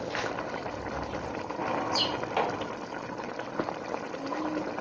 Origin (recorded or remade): recorded